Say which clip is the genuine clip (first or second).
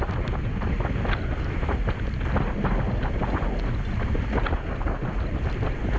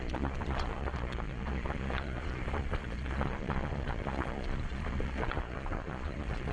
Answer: first